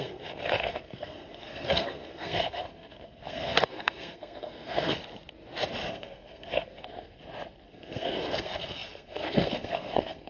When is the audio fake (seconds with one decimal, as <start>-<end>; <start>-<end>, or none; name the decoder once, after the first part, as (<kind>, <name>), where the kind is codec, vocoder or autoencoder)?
0.0-5.0 (codec, SNAC); 5.9-7.2; 7.7-10.3